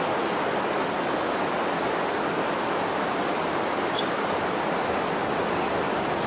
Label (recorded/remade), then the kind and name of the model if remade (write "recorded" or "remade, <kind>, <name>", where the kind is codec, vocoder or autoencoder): recorded